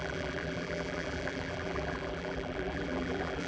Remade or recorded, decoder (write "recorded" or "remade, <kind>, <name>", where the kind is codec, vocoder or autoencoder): remade, vocoder, BigVGAN v2